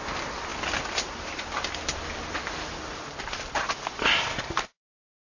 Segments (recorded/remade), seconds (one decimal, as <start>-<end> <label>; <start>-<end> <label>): 0.0-5.3 recorded